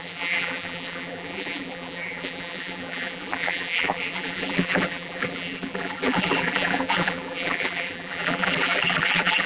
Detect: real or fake fake